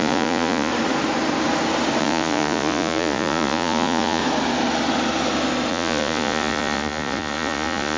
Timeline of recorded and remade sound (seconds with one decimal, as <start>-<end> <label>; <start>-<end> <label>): 0.0-0.7 remade; 0.7-2.0 recorded; 2.0-4.2 remade; 4.2-5.7 recorded; 5.7-8.0 remade